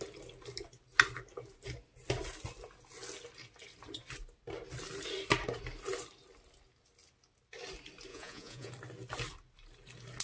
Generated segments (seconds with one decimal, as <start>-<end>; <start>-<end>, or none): 8.1-8.7